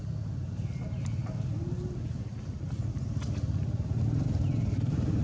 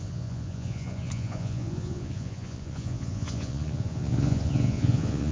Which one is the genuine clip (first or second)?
first